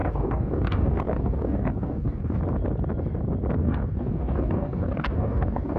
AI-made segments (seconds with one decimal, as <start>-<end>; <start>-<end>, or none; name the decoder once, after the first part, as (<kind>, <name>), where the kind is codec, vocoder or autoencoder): 0.0-2.4 (codec, DAC); 3.6-5.8